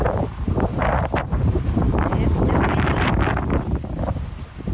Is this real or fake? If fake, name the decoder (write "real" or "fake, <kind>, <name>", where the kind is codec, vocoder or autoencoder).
fake, vocoder, BigVGAN v2